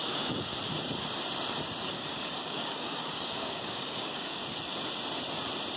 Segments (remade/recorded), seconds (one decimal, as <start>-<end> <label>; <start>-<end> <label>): 0.0-0.5 remade; 0.5-1.8 recorded; 1.8-4.4 remade; 4.4-5.8 recorded